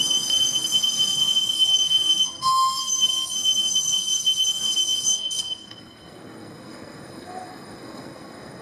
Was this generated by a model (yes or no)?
yes